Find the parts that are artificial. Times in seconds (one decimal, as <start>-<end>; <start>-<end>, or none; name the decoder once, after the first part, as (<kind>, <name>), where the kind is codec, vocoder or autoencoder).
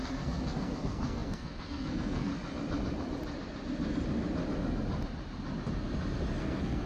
0.0-2.3 (codec, SNAC); 6.4-6.9